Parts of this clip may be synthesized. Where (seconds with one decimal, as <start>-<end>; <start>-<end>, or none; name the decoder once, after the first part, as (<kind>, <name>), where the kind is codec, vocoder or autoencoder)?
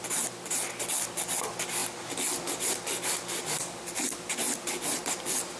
none